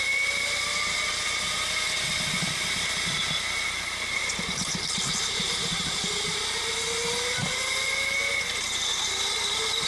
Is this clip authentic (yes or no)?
yes